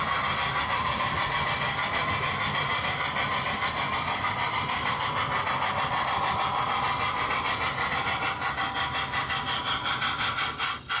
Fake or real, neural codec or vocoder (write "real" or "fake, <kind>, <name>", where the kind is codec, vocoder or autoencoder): real